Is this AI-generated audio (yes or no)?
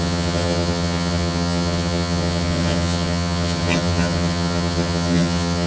yes